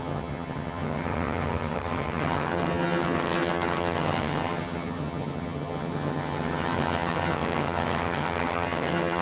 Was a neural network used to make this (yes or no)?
yes